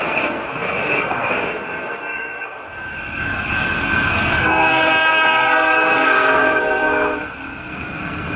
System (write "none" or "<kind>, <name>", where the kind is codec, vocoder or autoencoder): codec, SNAC